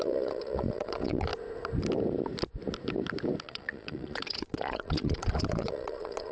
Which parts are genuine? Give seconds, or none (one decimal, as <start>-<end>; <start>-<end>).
1.3-3.4